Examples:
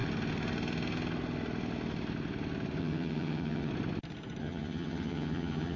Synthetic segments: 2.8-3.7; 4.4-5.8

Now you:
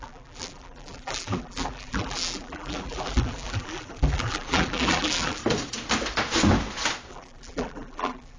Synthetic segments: 0.0-5.4; 7.1-8.4

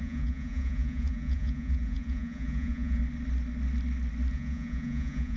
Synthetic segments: 0.0-3.0; 4.3-5.4

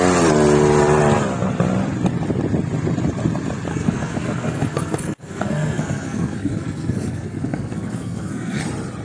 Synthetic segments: 3.7-8.6

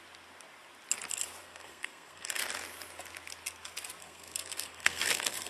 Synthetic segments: 1.4-2.4; 4.0-5.5